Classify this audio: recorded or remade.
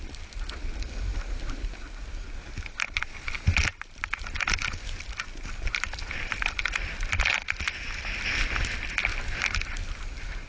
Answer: recorded